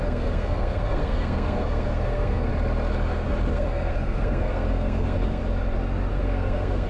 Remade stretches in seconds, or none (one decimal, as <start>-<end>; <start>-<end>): 0.0-2.5; 3.5-5.4; 6.1-6.9